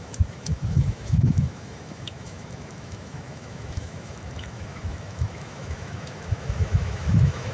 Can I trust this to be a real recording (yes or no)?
no